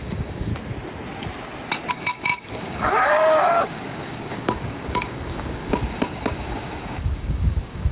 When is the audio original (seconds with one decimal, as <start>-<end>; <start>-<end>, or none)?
0.5-1.9